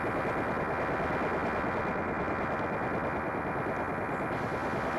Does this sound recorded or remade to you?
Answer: recorded